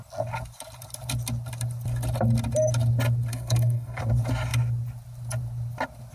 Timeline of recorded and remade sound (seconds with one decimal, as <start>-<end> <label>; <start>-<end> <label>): 0.0-3.3 recorded; 3.3-4.0 remade; 4.0-6.1 recorded